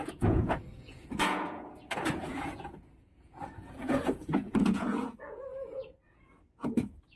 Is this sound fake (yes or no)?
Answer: yes